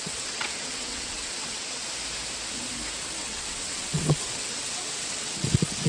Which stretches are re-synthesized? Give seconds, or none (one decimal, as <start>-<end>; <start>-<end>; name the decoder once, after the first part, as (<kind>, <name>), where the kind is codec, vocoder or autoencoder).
0.0-1.8 (vocoder, WaveNeXt); 3.2-5.9